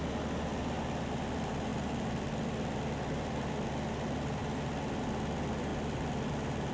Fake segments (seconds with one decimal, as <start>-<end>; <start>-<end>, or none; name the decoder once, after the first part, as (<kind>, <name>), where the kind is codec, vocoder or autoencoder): none